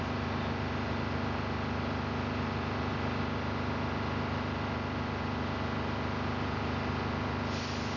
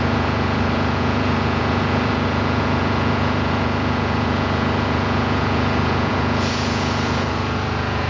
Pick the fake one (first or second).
second